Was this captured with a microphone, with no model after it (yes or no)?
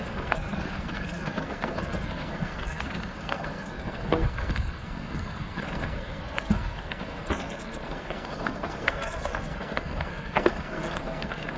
no